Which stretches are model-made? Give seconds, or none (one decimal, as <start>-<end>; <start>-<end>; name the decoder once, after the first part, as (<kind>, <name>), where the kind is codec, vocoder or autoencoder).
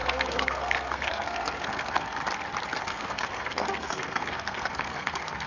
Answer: 0.0-2.2 (codec, SNAC); 2.8-5.5